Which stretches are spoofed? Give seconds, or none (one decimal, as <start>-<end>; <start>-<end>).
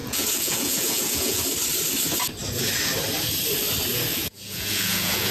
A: 0.0-1.4; 4.1-5.3